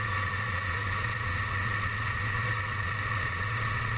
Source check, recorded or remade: remade